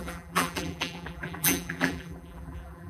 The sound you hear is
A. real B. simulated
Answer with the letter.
B